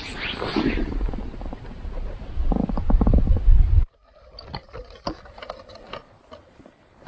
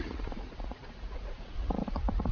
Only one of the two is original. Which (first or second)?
first